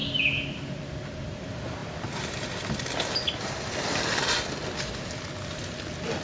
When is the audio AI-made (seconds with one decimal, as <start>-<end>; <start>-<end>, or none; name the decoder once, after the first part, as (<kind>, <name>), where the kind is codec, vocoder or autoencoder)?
none